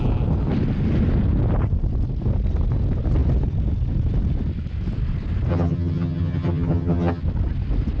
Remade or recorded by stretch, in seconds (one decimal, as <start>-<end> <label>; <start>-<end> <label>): 0.0-5.5 recorded; 5.5-7.2 remade; 7.2-8.0 recorded